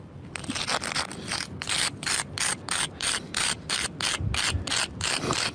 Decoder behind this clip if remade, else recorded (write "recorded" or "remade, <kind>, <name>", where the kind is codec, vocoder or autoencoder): recorded